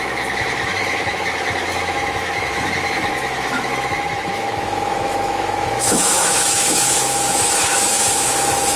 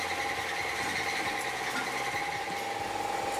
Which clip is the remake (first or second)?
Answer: first